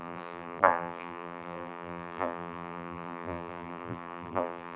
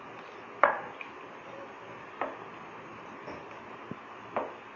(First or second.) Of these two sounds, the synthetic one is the first